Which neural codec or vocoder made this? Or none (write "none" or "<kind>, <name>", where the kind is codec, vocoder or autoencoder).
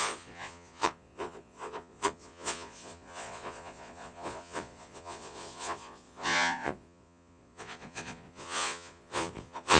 vocoder, Vocos